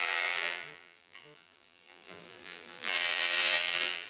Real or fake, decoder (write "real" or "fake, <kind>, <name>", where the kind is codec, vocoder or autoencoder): fake, vocoder, BigVGAN v2